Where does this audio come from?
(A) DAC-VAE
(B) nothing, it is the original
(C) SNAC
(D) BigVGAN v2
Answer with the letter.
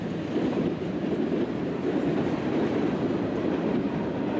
B